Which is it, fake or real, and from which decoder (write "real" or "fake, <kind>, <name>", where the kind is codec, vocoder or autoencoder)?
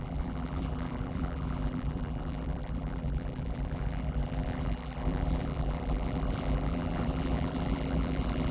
fake, vocoder, BigVGAN v2